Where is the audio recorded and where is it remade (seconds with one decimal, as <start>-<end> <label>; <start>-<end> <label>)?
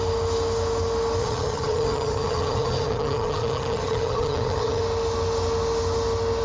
0.0-1.2 recorded; 1.2-4.8 remade; 4.8-6.4 recorded